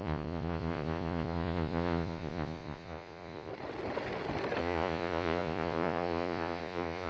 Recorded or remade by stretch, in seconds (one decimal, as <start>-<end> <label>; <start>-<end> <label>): 0.0-3.5 remade; 3.5-4.6 recorded; 4.6-7.1 remade